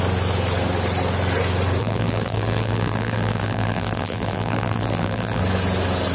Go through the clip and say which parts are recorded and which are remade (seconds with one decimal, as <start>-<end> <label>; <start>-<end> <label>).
0.0-1.8 recorded; 1.8-5.4 remade; 5.4-6.1 recorded